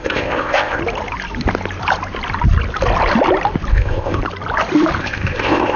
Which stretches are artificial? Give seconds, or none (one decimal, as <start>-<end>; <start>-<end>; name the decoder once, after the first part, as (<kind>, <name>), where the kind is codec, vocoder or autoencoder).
0.0-0.8 (codec, ZipCodec); 3.7-4.2; 5.0-5.8